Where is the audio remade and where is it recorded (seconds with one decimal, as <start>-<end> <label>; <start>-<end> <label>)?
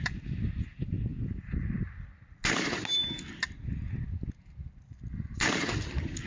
0.0-6.3 recorded